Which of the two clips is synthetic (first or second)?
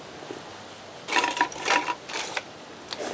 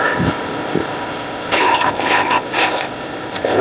second